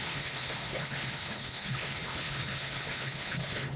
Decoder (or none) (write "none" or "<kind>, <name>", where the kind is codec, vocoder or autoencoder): codec, HILCodec